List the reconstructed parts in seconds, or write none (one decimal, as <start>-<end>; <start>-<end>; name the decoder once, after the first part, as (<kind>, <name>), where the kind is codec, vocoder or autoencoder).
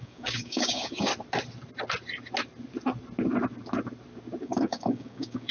0.0-1.1 (codec, DAC); 4.4-5.5